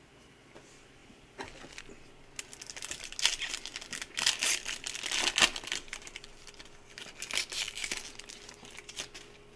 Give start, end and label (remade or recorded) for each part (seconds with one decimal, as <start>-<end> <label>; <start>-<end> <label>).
0.0-9.6 recorded